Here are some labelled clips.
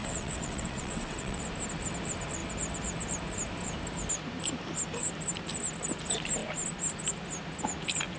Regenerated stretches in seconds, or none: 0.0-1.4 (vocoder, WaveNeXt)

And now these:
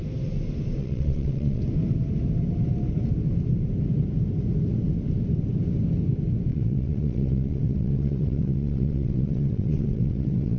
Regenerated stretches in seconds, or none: 0.8-1.6 (vocoder, WaveNeXt); 6.5-10.6